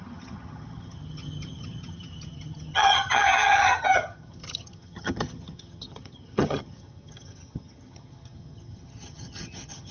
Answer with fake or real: fake